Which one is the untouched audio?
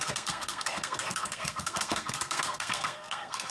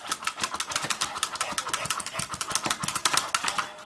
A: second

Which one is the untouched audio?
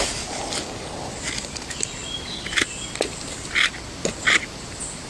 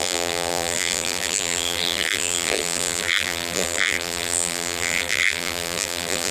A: first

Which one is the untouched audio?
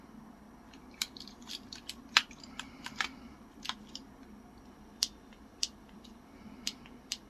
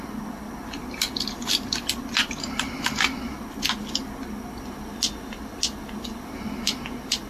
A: second